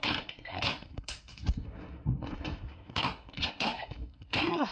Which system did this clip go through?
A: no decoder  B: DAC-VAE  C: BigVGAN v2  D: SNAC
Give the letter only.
D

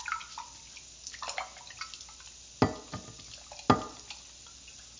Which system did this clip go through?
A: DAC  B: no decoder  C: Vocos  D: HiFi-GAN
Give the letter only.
B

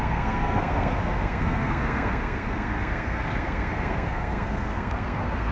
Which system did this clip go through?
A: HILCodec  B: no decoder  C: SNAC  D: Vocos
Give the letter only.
C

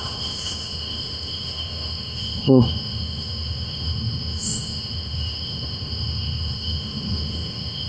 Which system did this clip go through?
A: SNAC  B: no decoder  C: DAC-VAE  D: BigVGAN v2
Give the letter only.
C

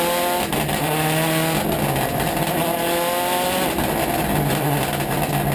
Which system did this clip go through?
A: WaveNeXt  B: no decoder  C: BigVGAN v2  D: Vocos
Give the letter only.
B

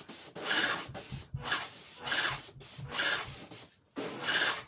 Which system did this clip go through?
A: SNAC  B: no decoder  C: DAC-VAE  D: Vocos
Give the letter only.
B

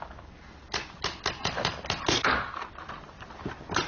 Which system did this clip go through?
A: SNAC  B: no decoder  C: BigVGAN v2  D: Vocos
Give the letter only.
B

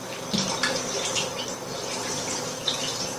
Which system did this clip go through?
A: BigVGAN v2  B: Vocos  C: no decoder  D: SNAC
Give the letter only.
C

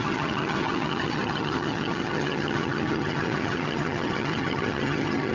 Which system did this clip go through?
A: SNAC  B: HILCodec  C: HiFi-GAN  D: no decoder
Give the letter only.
C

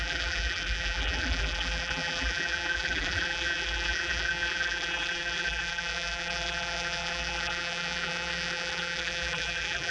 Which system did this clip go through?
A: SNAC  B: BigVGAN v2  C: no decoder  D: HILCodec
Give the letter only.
B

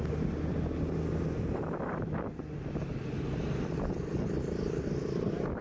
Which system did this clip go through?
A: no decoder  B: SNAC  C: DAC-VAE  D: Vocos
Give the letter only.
A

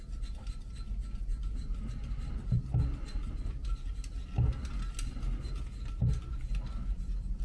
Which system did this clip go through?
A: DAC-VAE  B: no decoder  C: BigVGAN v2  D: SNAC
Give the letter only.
B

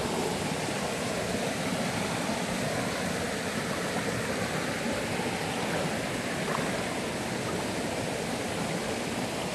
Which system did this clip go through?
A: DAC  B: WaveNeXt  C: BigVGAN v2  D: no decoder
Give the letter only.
C